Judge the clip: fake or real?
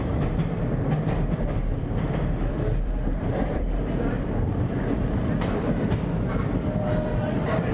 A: fake